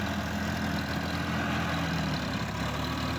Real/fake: real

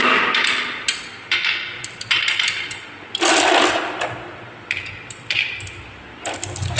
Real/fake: real